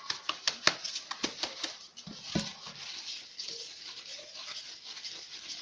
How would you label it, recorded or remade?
recorded